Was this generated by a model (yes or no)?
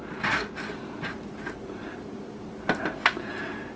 no